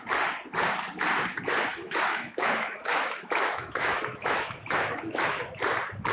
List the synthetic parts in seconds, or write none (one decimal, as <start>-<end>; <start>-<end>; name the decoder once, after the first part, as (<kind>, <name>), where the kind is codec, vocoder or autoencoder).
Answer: 1.7-5.4 (autoencoder, DAC-VAE)